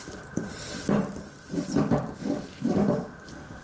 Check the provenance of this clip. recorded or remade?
remade